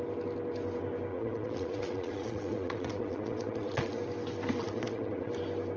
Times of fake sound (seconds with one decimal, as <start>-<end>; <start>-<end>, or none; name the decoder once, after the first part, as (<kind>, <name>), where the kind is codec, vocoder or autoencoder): 1.1-4.0 (vocoder, Vocos); 4.6-5.3